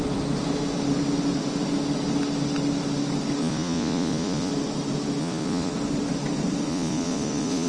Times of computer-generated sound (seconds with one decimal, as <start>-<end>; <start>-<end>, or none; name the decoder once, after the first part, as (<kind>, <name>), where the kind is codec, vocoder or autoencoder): 3.4-4.5 (vocoder, Vocos); 5.2-5.7; 6.7-7.7